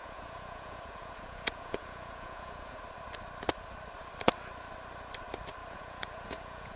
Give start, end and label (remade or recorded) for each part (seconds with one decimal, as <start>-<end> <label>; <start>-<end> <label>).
0.0-2.8 remade; 2.8-5.6 recorded; 5.6-6.8 remade